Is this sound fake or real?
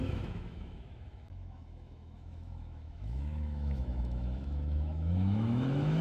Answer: fake